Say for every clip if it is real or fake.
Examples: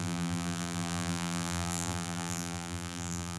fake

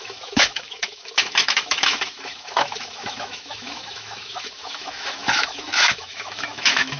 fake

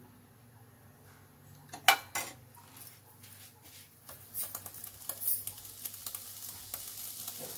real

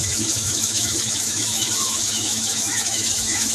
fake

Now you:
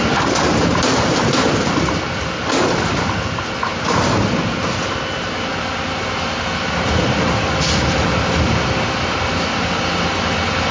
real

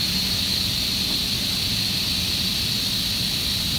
real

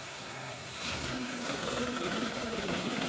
fake